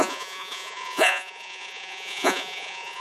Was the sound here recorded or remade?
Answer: remade